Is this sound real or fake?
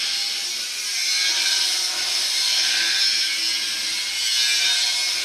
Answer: real